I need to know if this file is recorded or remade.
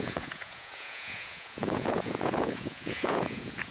remade